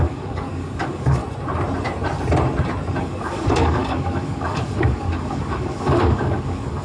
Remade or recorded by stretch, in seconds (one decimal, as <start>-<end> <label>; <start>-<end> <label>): 0.0-1.2 remade; 1.2-3.0 recorded; 3.0-6.8 remade